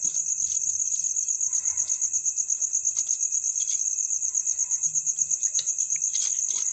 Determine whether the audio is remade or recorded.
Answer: recorded